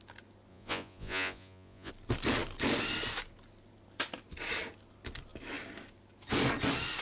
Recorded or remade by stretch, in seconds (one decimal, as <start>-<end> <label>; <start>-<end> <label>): 0.0-0.5 recorded; 0.5-1.9 remade; 1.9-7.0 recorded